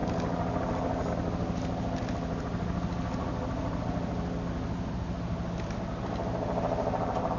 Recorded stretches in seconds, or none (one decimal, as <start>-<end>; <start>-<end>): 0.0-7.4